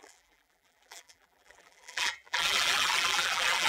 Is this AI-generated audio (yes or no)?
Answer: yes